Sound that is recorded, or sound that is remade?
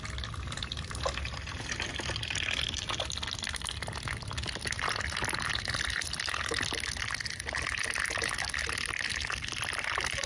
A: recorded